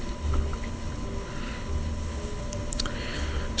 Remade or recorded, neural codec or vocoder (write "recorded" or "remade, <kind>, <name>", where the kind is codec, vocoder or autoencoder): remade, codec, HILCodec